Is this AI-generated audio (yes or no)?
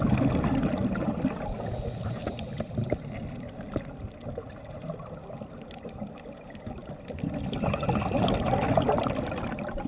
no